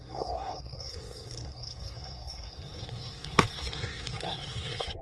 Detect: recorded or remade remade